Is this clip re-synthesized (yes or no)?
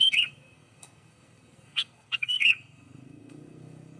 yes